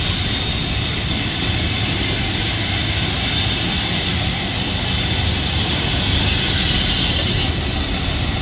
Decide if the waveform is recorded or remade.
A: recorded